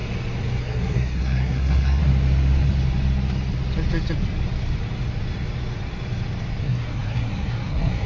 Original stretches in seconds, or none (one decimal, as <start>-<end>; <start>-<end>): 0.0-0.6; 2.0-6.6